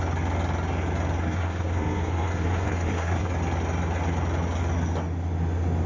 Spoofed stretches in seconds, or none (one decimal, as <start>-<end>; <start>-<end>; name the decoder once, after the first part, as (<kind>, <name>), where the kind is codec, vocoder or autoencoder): 1.2-3.3 (codec, SNAC)